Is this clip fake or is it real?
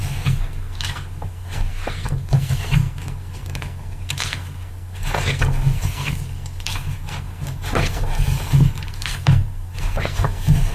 fake